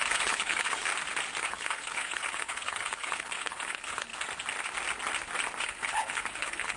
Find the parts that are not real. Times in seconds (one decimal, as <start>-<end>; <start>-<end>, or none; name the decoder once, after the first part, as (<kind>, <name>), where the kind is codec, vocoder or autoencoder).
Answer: 0.0-0.9 (codec, HILCodec); 1.4-4.1; 5.6-6.8